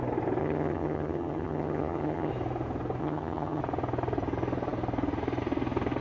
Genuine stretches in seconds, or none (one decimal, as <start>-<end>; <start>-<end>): 0.0-0.4; 2.3-3.0; 3.6-6.0

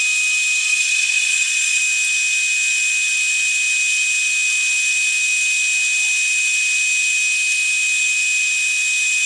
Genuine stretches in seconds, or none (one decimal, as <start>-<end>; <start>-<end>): 0.0-0.6; 1.8-9.3

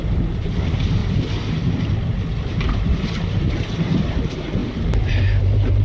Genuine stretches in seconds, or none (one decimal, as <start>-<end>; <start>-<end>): 1.0-2.5

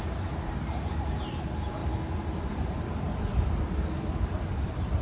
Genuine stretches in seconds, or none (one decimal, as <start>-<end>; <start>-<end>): 0.0-1.8

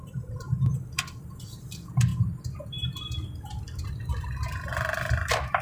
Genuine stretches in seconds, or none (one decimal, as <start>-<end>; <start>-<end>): 2.1-3.9

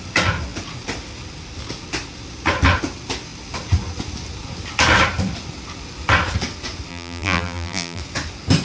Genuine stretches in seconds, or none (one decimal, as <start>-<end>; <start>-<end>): 0.0-6.9; 8.0-8.6

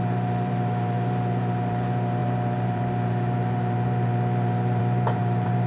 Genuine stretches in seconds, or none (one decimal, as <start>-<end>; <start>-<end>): none

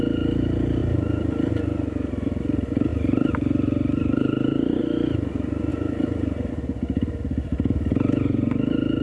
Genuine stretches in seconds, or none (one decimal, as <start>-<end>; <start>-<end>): 0.0-0.8; 1.5-2.9; 4.8-5.7; 6.5-9.0